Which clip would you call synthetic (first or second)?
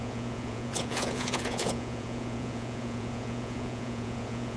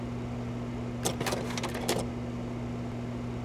first